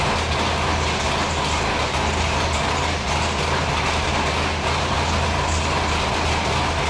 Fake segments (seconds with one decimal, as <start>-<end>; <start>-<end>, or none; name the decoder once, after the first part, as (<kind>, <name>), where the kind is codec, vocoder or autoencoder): none